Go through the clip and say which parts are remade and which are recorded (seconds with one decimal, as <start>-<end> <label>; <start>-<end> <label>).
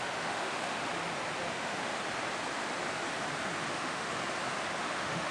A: 0.0-0.8 remade; 0.8-1.5 recorded; 1.5-1.9 remade; 1.9-3.7 recorded; 3.7-4.2 remade; 4.2-4.8 recorded; 4.8-5.3 remade